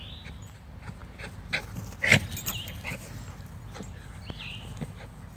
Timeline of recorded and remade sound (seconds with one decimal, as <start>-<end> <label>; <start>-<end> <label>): 0.0-5.4 recorded